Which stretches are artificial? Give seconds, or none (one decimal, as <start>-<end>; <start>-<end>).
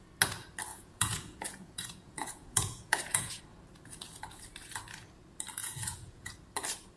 0.7-3.4; 5.6-6.3